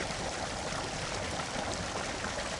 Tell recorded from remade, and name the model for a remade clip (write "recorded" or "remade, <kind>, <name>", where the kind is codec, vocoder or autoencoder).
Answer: recorded